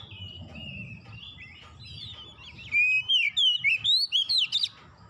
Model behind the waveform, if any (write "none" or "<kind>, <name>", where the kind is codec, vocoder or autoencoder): none